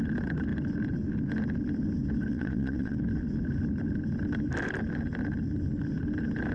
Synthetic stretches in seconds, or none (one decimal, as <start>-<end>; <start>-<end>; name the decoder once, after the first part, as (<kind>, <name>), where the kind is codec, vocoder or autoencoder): 2.3-3.0 (vocoder, Vocos)